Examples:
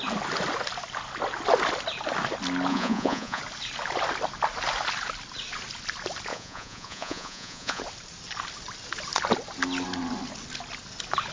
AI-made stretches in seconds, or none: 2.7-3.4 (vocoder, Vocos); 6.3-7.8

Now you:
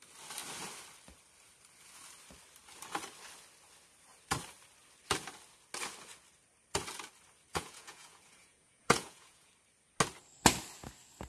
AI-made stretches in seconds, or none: 7.5-9.5 (vocoder, Vocos)

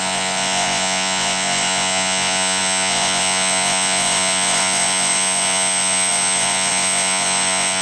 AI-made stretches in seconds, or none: 0.0-7.8 (vocoder, Vocos)

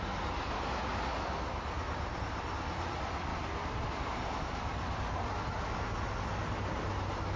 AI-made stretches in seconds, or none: none

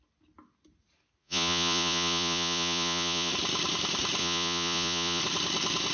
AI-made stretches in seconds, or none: 1.2-3.3 (vocoder, Vocos); 4.2-5.2

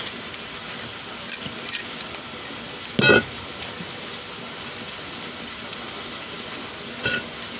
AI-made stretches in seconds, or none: none

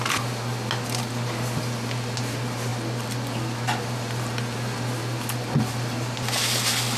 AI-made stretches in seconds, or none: none